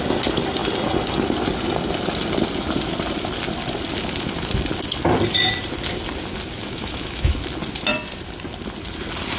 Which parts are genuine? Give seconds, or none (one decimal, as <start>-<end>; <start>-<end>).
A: 0.0-6.6; 7.4-9.4